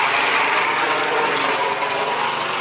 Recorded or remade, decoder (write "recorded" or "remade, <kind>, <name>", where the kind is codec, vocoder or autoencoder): recorded